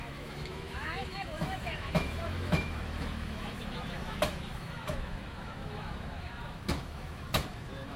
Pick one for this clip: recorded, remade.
remade